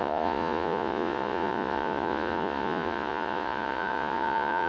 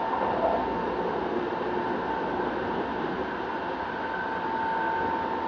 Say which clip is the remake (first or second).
first